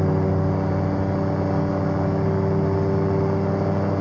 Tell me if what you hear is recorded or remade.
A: recorded